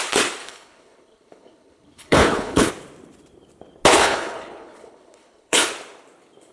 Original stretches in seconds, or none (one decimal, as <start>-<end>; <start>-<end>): 0.0-0.4; 2.7-3.9; 5.7-6.5